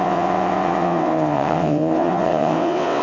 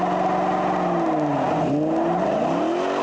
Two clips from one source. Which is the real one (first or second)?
second